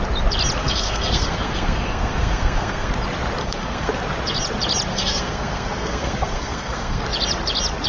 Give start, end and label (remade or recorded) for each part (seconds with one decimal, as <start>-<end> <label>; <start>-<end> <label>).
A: 0.0-0.6 recorded; 0.6-2.9 remade; 2.9-3.4 recorded; 3.4-3.9 remade; 3.9-4.9 recorded; 4.9-7.0 remade; 7.0-7.9 recorded